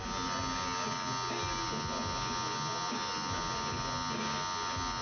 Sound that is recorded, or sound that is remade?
recorded